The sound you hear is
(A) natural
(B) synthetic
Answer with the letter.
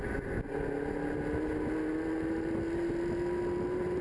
A